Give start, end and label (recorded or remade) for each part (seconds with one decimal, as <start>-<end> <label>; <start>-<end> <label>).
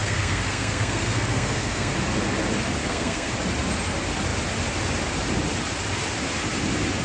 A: 0.0-1.9 remade; 1.9-2.8 recorded; 2.8-3.3 remade; 3.3-7.0 recorded